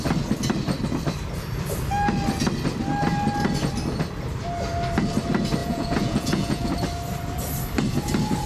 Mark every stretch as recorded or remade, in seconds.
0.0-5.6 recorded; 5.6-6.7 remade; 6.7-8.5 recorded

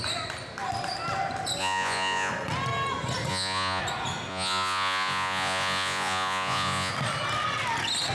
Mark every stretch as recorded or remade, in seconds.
0.0-1.6 recorded; 1.6-2.3 remade; 2.3-3.3 recorded; 3.3-3.8 remade; 3.8-4.3 recorded; 4.3-6.9 remade; 6.9-8.1 recorded

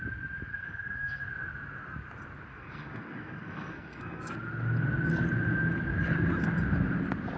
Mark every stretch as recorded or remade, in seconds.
0.0-0.5 recorded; 0.5-1.3 remade; 1.3-2.5 recorded; 2.5-4.3 remade; 4.3-7.4 recorded

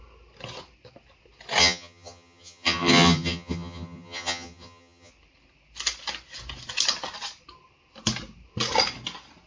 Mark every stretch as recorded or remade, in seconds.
0.0-1.6 recorded; 1.6-5.1 remade; 5.1-9.5 recorded

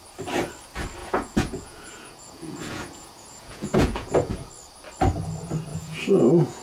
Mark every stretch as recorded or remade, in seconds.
0.0-1.0 recorded; 1.0-4.5 remade; 4.5-5.7 recorded; 5.7-6.6 remade